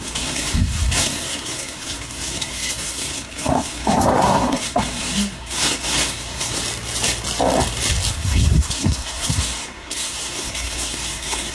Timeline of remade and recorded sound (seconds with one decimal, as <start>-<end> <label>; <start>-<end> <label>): 0.0-6.6 remade; 6.6-8.1 recorded; 8.1-11.5 remade

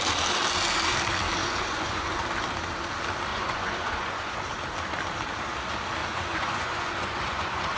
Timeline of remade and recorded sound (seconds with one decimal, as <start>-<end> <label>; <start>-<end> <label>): 0.0-1.4 recorded; 1.4-2.2 remade; 2.2-3.3 recorded; 3.3-4.4 remade; 4.4-6.0 recorded; 6.0-7.8 remade

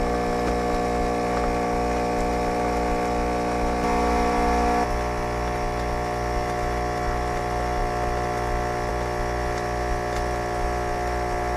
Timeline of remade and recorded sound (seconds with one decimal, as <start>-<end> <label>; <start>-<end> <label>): 0.0-11.6 recorded

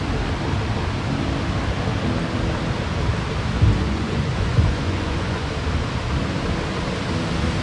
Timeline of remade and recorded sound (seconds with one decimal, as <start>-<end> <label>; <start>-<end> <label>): 0.0-3.8 recorded; 3.8-5.5 remade; 5.5-7.6 recorded